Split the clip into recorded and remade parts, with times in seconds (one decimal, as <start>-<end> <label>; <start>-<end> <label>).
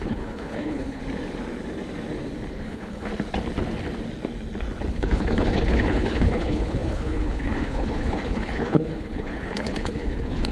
0.0-1.0 remade; 1.0-2.5 recorded; 2.5-3.1 remade; 3.1-4.9 recorded; 4.9-10.5 remade